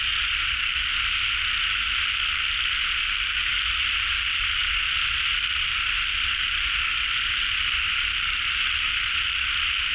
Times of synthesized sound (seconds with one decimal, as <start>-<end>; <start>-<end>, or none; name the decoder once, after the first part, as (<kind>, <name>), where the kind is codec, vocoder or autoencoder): none